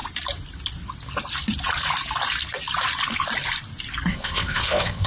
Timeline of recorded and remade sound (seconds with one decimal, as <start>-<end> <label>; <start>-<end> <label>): 0.0-4.1 recorded; 4.1-5.1 remade